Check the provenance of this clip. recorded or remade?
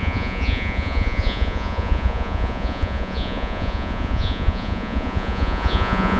remade